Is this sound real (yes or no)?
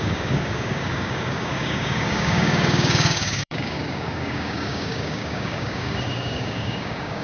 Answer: no